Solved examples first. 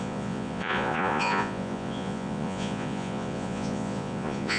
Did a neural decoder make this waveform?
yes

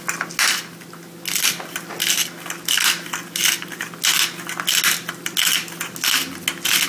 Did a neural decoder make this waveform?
no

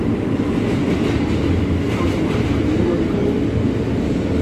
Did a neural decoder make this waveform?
no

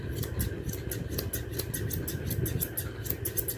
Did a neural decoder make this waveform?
no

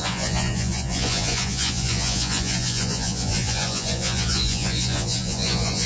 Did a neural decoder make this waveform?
yes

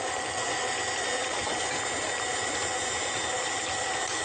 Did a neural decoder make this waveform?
no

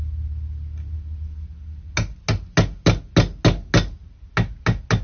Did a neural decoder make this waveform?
no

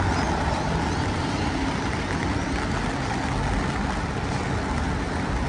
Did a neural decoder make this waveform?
no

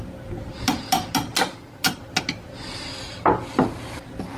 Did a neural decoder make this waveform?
no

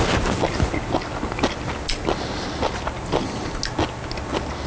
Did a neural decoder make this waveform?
no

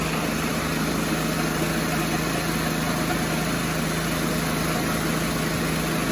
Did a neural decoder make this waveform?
no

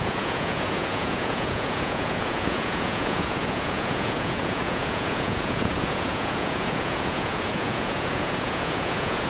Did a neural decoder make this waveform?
yes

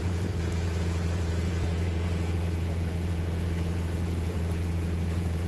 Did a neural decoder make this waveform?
yes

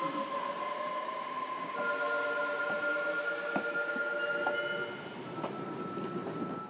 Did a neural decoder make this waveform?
no